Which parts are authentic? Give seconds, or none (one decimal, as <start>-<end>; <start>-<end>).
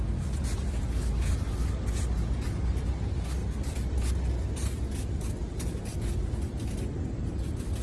0.0-3.4; 5.3-7.8